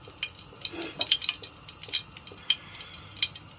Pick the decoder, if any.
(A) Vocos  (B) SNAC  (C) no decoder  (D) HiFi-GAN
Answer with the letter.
C